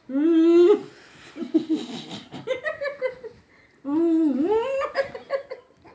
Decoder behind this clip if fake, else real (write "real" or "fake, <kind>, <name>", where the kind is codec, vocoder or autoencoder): real